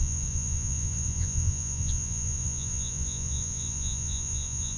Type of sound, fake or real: fake